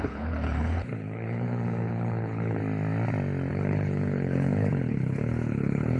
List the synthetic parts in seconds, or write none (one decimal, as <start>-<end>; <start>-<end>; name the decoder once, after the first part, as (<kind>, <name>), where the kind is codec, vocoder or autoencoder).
0.0-2.6 (codec, HILCodec); 3.5-6.0